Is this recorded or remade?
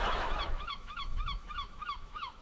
remade